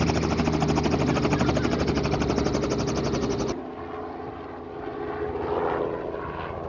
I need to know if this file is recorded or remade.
recorded